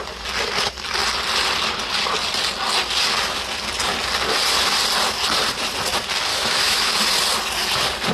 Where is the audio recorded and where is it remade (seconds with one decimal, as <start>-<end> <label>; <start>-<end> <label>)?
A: 0.0-6.3 recorded; 6.3-6.9 remade; 6.9-8.1 recorded